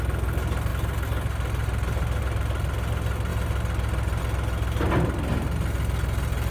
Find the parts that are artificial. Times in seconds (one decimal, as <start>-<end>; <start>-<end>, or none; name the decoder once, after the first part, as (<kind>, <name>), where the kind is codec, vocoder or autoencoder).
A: none